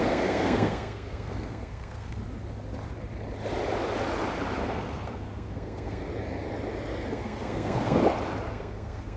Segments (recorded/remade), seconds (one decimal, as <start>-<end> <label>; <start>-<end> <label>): 0.0-2.2 remade; 2.2-4.7 recorded; 4.7-6.1 remade; 6.1-7.1 recorded; 7.1-8.0 remade; 8.0-8.5 recorded; 8.5-9.2 remade